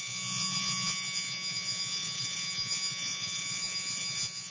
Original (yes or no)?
no